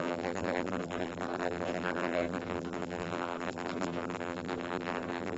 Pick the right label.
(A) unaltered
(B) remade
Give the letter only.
B